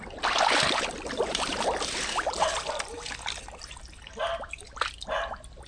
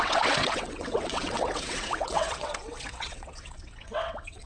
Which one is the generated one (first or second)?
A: second